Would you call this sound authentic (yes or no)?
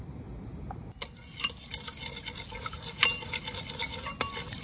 yes